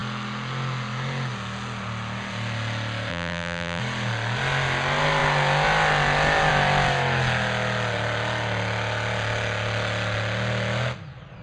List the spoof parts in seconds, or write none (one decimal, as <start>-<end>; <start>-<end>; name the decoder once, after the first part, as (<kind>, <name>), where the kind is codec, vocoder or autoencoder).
3.1-3.8 (vocoder, BigVGAN v2)